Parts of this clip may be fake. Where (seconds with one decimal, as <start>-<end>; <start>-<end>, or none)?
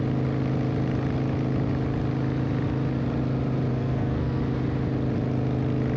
3.7-4.4